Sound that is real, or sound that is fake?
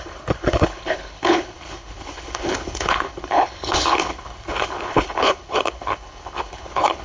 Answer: fake